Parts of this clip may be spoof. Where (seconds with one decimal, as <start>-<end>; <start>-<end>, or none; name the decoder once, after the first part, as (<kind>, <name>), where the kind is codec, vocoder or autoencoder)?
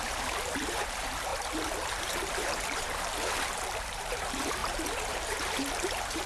0.0-1.3 (vocoder, BigVGAN v2); 2.0-6.3